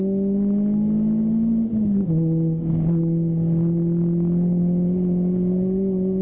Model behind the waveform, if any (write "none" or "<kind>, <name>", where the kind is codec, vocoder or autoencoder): none